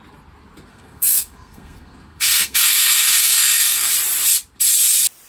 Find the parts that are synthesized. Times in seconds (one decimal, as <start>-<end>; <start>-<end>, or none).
0.7-3.9